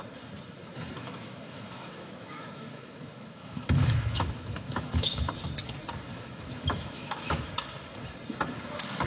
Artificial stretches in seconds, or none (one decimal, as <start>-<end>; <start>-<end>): 1.0-5.3; 6.1-7.5